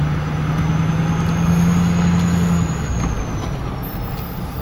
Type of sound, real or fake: real